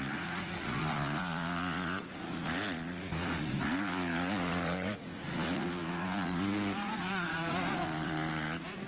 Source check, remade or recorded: remade